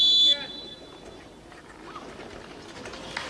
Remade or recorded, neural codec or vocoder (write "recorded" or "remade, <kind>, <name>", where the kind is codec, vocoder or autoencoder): recorded